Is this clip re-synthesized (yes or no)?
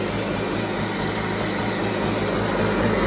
no